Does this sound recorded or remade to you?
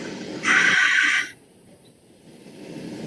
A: recorded